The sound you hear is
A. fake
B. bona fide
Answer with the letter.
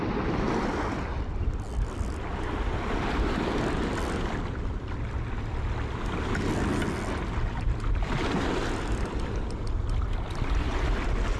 B